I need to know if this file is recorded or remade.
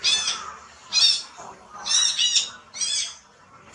recorded